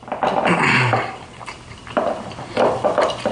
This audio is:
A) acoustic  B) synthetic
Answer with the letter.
A